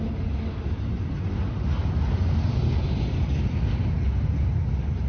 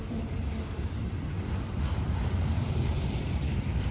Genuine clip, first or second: first